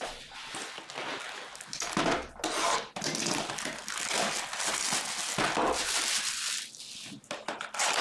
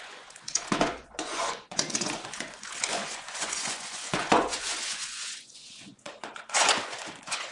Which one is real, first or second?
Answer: first